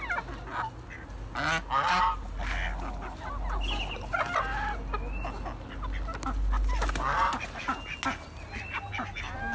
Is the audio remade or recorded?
recorded